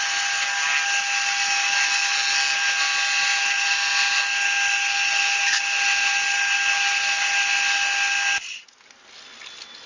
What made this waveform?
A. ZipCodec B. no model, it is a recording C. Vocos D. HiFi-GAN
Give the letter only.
B